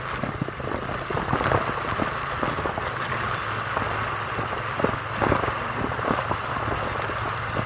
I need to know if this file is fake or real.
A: real